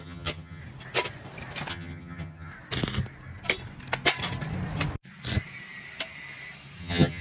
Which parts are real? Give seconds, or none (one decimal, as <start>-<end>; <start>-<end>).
0.6-1.7; 2.5-6.8